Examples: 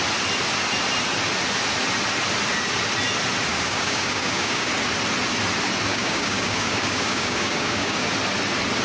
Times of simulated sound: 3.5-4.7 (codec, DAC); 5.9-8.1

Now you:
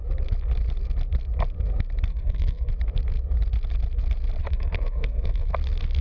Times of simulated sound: 2.1-2.7 (codec, SNAC); 4.4-5.5

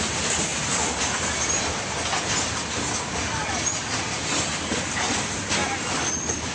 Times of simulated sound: none

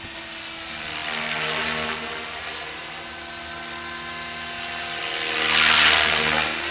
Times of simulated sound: none

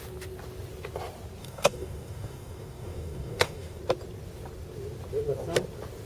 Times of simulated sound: 1.4-3.8 (codec, DAC)